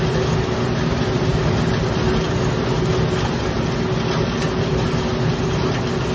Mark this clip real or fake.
real